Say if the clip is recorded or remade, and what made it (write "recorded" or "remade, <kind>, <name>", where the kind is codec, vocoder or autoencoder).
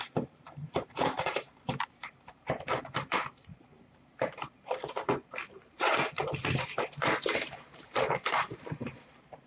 remade, vocoder, BigVGAN v2